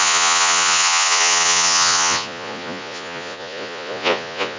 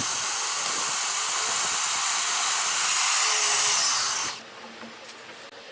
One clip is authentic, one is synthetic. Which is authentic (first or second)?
second